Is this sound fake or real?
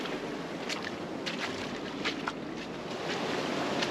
real